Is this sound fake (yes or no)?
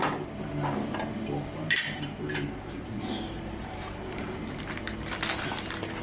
no